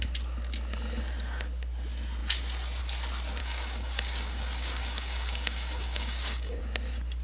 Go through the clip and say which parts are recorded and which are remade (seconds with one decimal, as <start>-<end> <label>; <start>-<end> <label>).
0.0-3.4 recorded; 3.4-6.6 remade; 6.6-7.2 recorded